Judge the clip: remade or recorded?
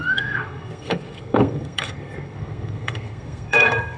remade